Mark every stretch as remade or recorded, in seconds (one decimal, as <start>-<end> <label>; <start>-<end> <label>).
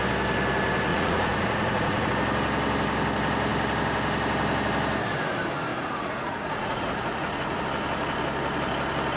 0.0-0.9 recorded; 0.9-2.1 remade; 2.1-5.7 recorded; 5.7-7.6 remade; 7.6-9.2 recorded